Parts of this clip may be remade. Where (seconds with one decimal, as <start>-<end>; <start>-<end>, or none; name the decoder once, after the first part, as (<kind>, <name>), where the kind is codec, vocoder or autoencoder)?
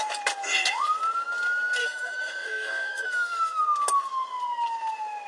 1.8-3.6 (autoencoder, DAC-VAE)